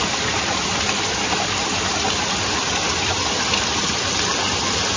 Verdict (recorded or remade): recorded